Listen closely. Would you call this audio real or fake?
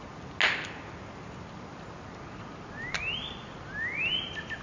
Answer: real